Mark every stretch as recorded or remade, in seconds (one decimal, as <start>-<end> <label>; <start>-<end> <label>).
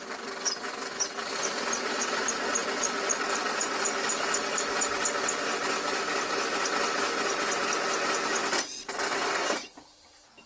0.0-10.5 recorded